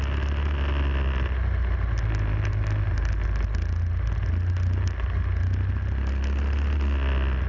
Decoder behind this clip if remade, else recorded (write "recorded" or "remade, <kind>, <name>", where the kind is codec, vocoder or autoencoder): recorded